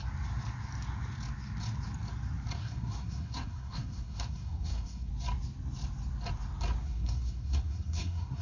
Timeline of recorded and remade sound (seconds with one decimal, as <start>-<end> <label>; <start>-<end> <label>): 0.0-2.6 recorded; 2.6-5.1 remade; 5.1-6.8 recorded; 6.8-8.4 remade